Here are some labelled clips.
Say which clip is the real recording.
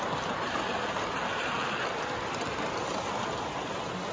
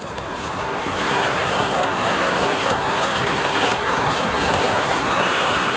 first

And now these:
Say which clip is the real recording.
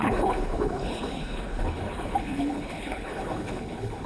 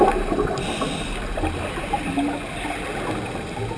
second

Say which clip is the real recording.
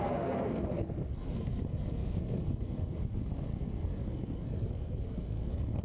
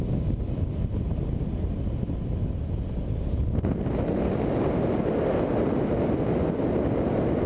second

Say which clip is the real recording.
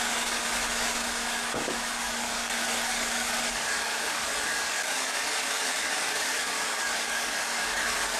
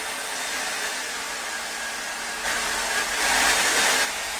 second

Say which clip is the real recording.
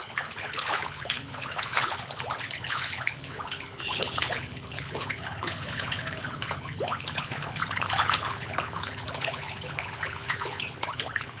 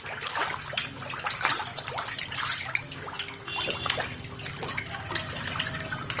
second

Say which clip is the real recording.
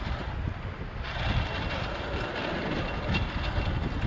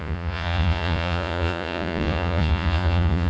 first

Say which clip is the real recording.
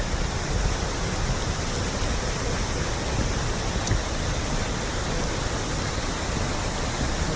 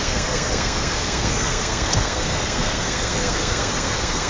first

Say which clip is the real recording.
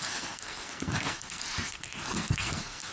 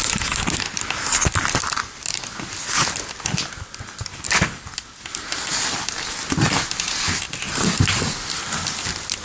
second